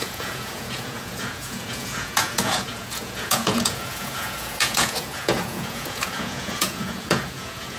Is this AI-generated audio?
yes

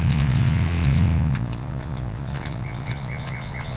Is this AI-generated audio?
yes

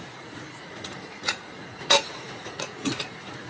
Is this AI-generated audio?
yes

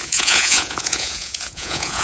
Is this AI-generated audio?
yes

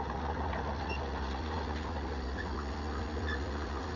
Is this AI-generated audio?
yes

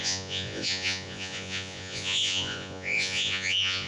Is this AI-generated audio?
yes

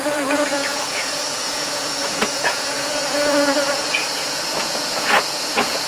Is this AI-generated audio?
yes